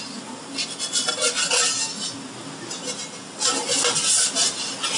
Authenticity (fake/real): real